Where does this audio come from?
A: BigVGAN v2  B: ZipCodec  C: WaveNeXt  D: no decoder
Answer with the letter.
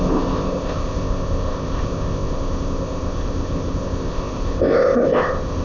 B